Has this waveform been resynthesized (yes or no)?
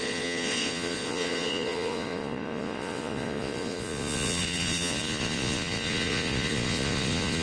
yes